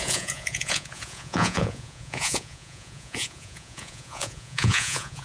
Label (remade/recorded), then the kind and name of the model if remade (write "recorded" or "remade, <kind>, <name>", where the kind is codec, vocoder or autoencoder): remade, vocoder, Vocos